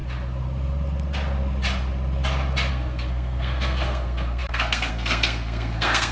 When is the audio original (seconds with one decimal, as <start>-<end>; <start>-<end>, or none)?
0.0-2.7